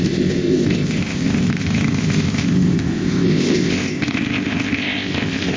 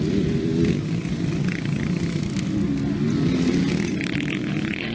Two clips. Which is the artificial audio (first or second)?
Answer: first